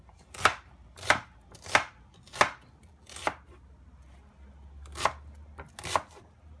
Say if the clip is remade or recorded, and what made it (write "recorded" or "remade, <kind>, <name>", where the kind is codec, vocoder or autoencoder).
recorded